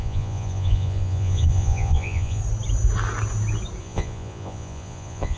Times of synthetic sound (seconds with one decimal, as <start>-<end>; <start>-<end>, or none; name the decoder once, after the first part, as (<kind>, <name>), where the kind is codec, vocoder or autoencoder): 0.0-2.4 (vocoder, Vocos); 3.8-5.4